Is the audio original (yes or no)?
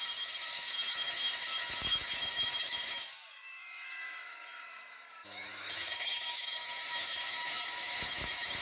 no